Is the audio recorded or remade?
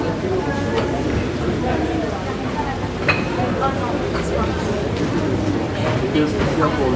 recorded